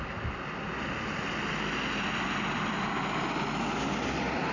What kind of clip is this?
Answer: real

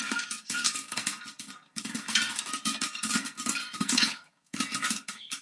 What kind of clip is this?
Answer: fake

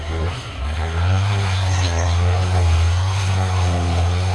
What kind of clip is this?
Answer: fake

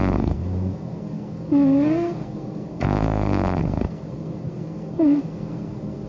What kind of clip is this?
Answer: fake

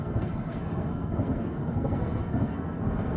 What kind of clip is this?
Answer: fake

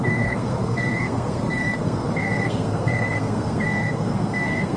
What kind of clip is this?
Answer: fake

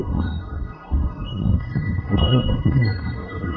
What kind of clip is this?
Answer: fake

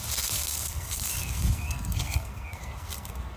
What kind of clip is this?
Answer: fake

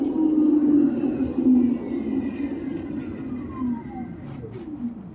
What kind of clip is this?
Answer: real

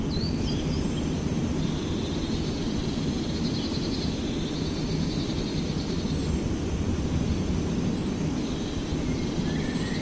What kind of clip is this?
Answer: real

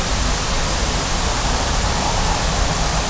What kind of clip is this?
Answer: real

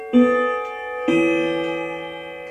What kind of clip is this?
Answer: real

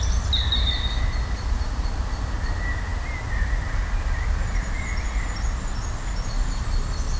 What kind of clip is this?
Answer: real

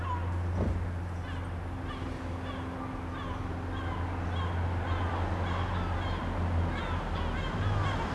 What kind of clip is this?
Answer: real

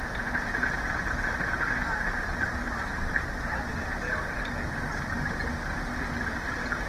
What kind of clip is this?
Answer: real